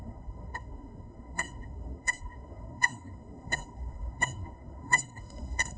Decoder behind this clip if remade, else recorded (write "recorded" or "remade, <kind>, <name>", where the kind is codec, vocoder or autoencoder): remade, codec, SNAC